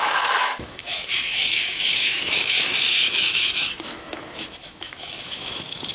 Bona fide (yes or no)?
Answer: no